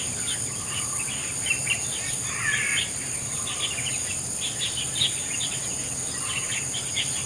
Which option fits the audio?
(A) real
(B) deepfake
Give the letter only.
A